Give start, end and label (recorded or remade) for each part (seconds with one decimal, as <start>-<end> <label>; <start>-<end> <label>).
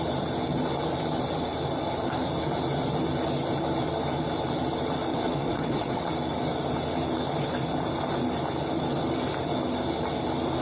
0.0-5.1 recorded; 5.1-6.1 remade; 6.1-10.6 recorded